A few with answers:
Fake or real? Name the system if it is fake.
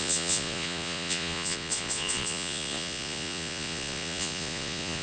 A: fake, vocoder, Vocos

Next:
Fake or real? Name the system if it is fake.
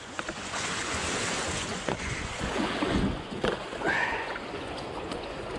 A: fake, vocoder, Vocos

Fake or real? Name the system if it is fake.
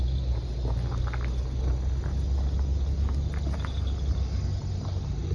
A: real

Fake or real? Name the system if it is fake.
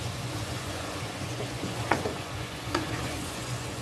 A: fake, vocoder, Vocos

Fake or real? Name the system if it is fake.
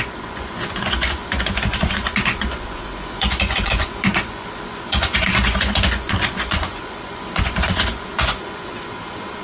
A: fake, vocoder, Vocos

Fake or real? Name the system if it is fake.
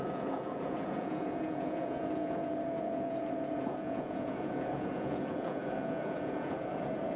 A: fake, vocoder, Vocos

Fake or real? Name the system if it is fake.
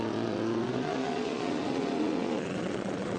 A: fake, vocoder, Vocos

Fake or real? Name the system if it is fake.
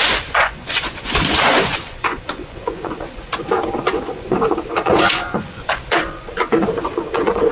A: fake, vocoder, Vocos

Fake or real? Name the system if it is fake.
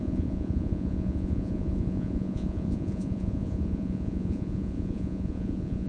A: fake, vocoder, Vocos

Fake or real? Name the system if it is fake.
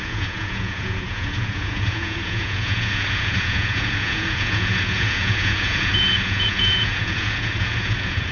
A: fake, vocoder, Vocos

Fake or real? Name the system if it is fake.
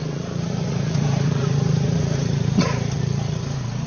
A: fake, vocoder, Vocos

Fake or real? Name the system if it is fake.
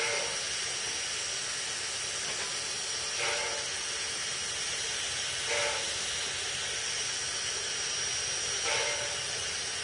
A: real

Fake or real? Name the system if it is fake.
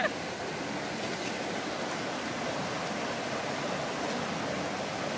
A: real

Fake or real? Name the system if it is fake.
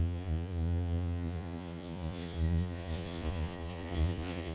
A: fake, vocoder, Vocos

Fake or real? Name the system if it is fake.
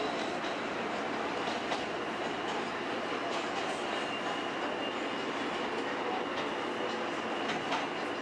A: real